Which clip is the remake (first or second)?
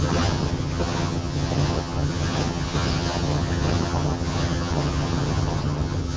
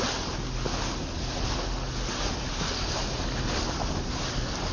first